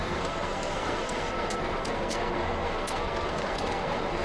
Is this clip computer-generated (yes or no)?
yes